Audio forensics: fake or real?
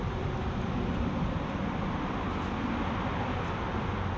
real